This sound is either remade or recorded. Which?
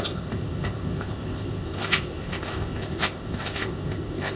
remade